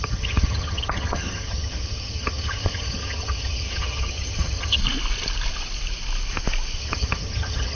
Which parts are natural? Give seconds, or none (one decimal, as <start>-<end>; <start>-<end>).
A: 4.8-6.8